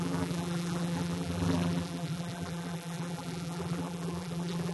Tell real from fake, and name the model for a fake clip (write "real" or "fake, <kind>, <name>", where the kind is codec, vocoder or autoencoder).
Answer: fake, vocoder, BigVGAN v2